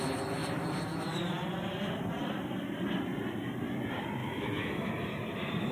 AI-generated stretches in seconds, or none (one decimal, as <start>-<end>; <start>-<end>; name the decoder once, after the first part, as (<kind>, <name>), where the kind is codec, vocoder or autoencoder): 4.2-4.9 (autoencoder, DAC-VAE)